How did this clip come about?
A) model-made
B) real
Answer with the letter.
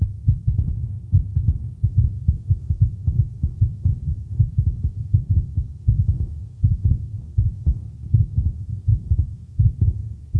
A